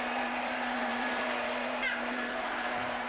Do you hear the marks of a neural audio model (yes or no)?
yes